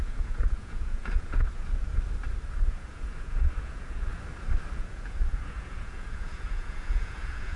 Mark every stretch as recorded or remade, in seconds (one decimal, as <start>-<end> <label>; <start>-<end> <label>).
0.0-1.9 remade; 1.9-2.7 recorded; 2.7-4.1 remade; 4.1-4.8 recorded; 4.8-7.6 remade